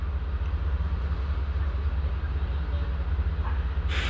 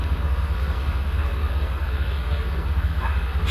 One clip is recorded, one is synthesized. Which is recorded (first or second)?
first